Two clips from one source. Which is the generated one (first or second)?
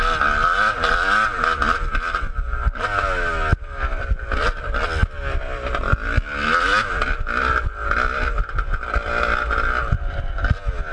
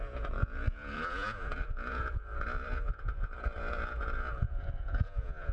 second